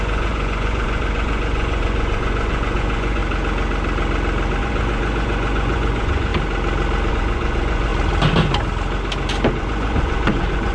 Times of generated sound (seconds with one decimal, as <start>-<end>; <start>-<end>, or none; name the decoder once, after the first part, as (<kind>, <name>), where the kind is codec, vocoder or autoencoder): 0.0-3.2 (vocoder, Vocos); 4.6-6.3; 7.1-7.9; 9.5-10.7